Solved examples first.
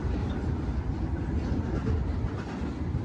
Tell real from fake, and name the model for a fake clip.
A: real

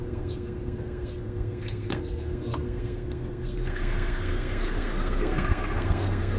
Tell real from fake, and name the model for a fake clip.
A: fake, codec, SNAC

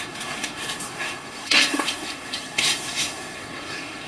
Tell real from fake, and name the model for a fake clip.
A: fake, codec, SNAC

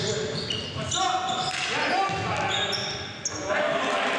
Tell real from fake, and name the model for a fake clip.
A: real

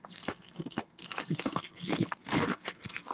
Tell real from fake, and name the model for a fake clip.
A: fake, codec, SNAC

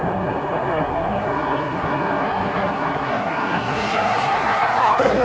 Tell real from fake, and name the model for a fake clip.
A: fake, codec, SNAC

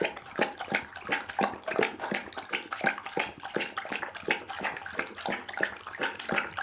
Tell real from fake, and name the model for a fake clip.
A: real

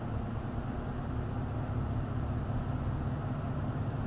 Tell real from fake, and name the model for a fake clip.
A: real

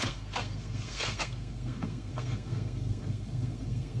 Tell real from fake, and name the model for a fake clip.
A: fake, codec, SNAC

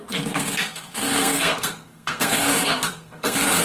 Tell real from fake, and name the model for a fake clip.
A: fake, codec, SNAC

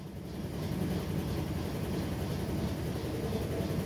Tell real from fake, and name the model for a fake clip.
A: real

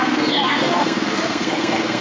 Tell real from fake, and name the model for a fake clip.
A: fake, codec, SNAC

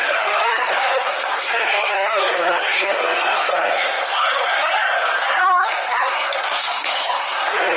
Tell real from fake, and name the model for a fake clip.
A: fake, codec, SNAC